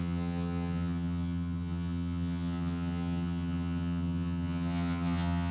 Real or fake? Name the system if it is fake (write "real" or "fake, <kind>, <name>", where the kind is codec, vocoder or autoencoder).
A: fake, vocoder, HiFi-GAN